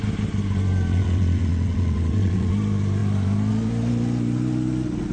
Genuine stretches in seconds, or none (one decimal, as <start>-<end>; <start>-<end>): 0.0-0.9; 2.5-5.1